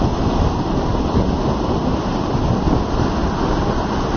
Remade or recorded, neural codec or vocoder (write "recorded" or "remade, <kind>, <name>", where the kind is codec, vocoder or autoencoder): recorded